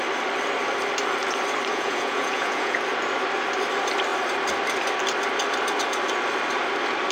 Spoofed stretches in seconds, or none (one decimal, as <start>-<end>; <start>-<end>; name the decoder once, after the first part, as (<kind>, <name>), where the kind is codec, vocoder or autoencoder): 1.7-2.8 (vocoder, Vocos)